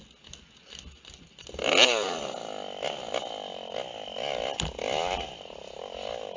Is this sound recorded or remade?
recorded